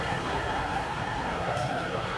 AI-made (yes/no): yes